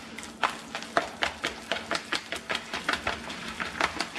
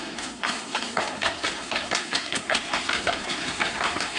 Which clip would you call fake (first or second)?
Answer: second